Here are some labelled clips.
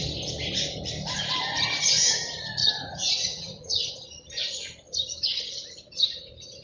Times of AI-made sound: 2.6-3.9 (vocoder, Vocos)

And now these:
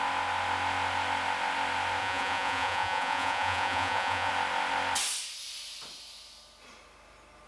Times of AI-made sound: 2.0-4.3 (vocoder, Vocos)